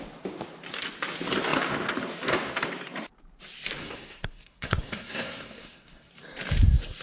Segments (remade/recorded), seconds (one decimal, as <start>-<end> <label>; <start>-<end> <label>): 0.0-3.8 recorded; 3.8-6.1 remade; 6.1-7.0 recorded